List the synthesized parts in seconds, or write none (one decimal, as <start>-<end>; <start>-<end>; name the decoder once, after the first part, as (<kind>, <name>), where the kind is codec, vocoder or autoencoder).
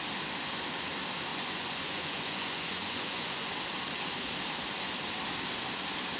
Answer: 1.3-3.5 (vocoder, Vocos)